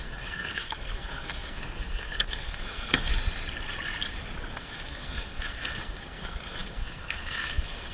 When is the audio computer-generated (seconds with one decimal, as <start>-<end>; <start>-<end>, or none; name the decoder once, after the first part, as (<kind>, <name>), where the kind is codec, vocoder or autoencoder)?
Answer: 0.0-3.1 (codec, SNAC); 4.5-7.9